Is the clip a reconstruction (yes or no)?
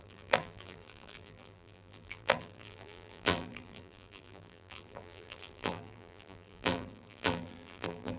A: yes